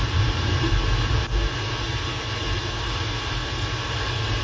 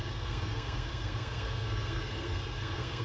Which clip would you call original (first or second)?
first